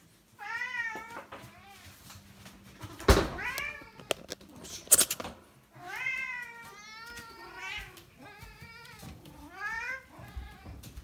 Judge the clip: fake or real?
real